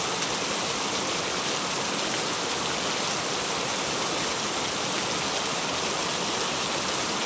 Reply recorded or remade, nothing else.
recorded